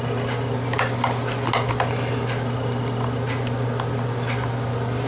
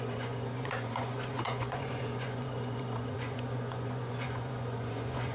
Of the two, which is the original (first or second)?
first